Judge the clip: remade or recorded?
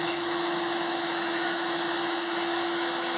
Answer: remade